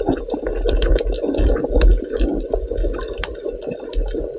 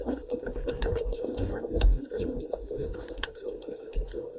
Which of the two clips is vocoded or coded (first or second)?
second